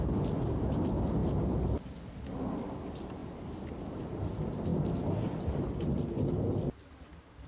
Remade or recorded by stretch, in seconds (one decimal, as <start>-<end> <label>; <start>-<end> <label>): 0.0-7.5 recorded